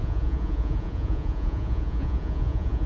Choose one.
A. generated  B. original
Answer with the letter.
A